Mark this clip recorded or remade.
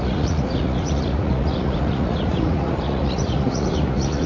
remade